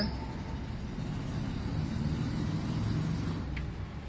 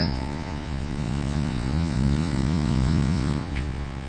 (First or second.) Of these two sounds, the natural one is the first